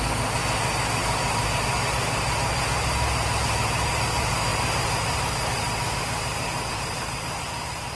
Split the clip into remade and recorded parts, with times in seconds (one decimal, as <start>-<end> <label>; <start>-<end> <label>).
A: 0.0-8.0 recorded